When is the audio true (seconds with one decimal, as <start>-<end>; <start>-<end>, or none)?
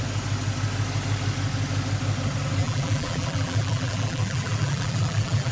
0.0-2.6